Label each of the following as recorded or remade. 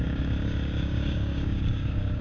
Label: remade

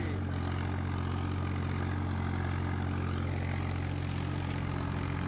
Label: recorded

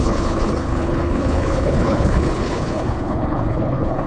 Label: remade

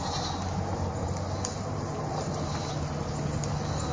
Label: recorded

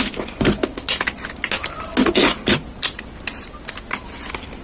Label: recorded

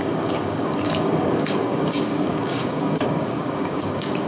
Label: remade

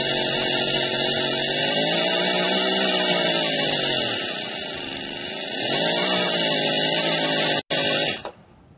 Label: recorded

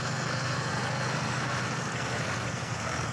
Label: remade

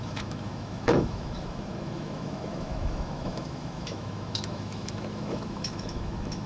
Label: remade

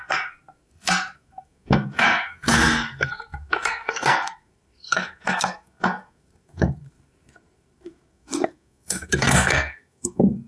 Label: remade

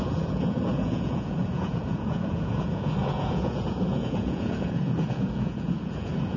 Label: remade